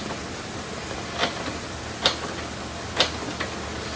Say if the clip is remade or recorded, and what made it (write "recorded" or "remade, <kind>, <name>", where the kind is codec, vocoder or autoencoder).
recorded